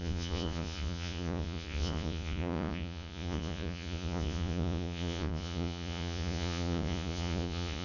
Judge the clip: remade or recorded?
remade